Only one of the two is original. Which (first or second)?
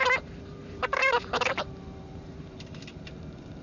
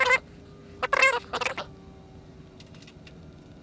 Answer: second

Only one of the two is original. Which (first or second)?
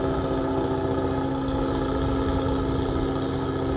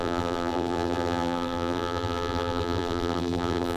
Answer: first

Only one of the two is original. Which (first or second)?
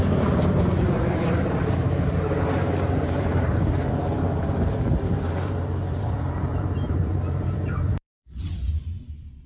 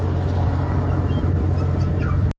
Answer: second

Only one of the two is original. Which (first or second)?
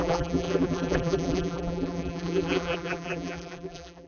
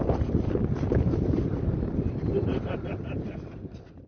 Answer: second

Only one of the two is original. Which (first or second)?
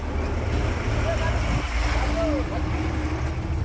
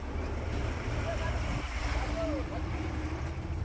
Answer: first